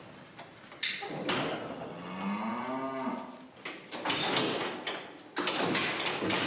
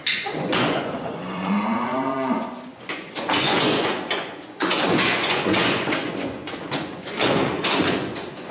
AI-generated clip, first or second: second